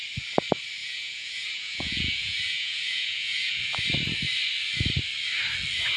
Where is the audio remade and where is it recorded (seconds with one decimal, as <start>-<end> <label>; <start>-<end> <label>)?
0.0-0.8 recorded; 0.8-3.5 remade; 3.5-6.0 recorded